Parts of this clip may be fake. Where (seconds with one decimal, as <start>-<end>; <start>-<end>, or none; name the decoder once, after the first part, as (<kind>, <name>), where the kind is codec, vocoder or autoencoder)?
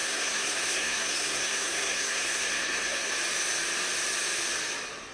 0.0-3.1 (codec, SNAC)